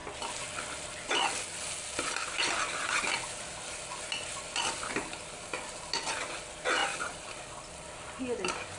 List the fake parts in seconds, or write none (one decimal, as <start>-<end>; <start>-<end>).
none